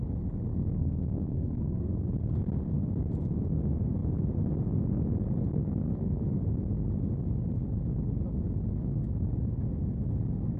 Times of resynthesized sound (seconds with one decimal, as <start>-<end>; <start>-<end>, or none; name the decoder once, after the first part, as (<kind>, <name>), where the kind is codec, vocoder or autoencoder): 0.5-2.1 (codec, SNAC); 5.5-6.2